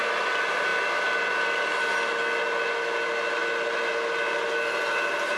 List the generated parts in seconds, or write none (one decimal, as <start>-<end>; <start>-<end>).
none